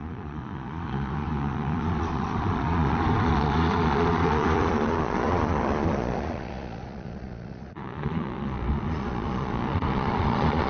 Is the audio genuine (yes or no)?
no